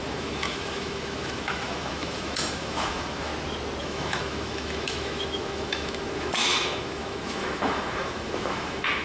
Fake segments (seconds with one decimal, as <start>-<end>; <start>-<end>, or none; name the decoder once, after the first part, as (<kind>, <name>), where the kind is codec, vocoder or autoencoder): 0.0-3.3 (autoencoder, DAC-VAE); 3.8-9.0